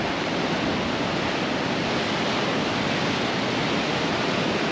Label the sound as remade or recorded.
recorded